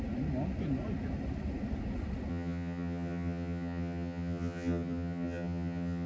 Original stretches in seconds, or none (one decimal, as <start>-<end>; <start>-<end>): 0.0-2.3